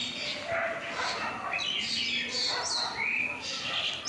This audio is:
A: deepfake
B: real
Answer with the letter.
B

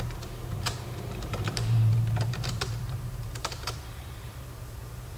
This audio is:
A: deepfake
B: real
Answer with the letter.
A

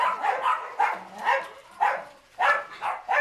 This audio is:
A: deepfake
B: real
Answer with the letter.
B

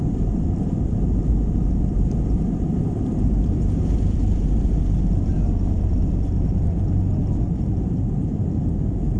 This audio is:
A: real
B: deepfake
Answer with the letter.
B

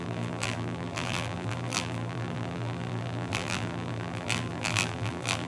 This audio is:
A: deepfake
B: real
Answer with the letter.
A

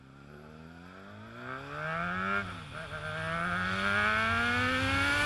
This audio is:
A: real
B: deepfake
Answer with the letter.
A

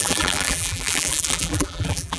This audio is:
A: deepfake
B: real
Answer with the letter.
A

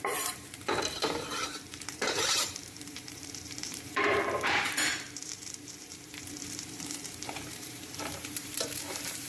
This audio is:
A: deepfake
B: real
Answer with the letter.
A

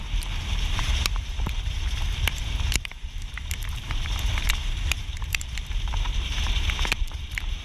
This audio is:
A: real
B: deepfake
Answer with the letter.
B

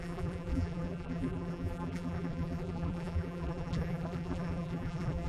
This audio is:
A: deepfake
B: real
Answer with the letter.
A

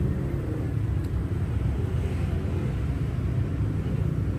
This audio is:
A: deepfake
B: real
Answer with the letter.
B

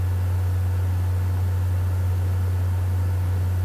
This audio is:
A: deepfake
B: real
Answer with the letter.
B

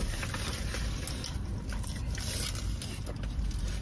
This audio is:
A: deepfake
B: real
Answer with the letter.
B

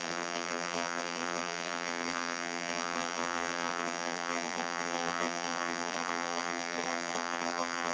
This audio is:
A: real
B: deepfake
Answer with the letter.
B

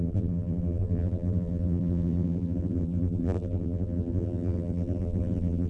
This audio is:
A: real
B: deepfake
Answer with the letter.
B